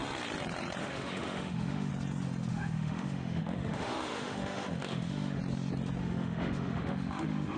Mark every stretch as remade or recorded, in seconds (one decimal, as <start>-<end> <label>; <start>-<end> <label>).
0.0-0.8 recorded; 0.8-1.9 remade; 1.9-2.5 recorded; 2.5-5.4 remade; 5.4-6.0 recorded; 6.0-7.6 remade